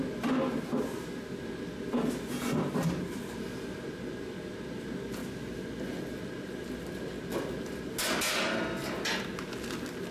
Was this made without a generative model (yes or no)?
yes